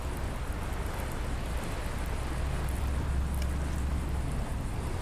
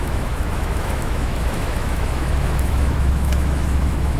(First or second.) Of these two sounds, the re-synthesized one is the second